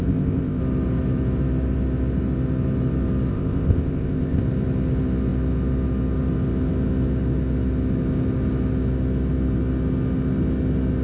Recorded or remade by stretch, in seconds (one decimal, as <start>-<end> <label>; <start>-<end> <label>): 0.0-0.6 remade; 0.6-3.3 recorded; 3.3-4.4 remade; 4.4-11.0 recorded